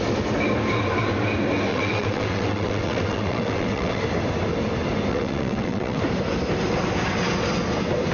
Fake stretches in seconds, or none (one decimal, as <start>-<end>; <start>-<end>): 1.7-4.0; 5.1-6.0